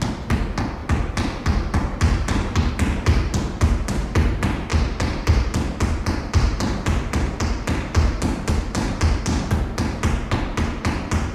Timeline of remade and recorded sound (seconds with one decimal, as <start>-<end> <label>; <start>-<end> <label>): 0.0-4.7 recorded; 4.7-9.2 remade; 9.2-11.3 recorded